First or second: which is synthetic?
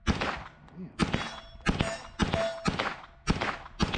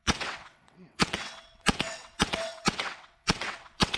second